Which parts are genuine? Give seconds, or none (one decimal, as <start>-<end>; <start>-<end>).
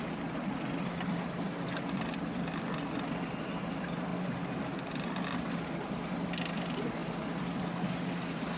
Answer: 0.0-7.0; 7.7-8.6